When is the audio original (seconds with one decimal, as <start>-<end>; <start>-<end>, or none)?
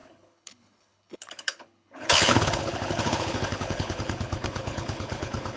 none